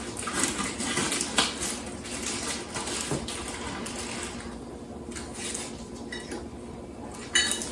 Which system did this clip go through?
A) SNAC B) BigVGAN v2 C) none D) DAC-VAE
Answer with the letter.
C